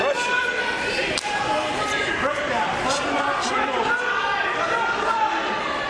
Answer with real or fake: fake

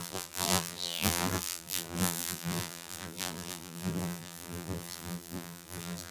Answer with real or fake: fake